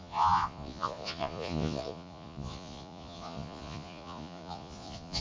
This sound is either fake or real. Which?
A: fake